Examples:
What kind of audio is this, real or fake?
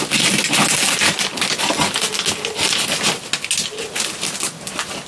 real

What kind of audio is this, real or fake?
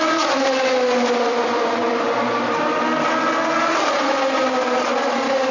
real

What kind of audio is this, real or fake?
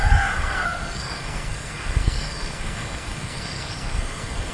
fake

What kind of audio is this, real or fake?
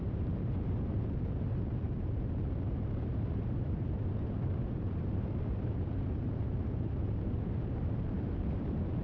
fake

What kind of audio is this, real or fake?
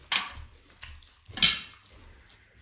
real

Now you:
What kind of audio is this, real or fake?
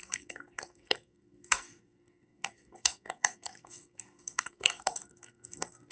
fake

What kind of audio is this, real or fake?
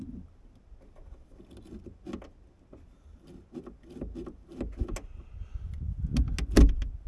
real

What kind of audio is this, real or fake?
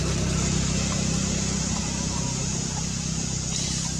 real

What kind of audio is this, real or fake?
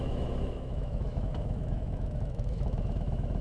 fake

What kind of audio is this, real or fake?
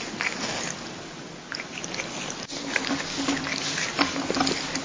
real